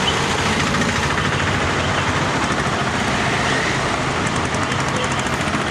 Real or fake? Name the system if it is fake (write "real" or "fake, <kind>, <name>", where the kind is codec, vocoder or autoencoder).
real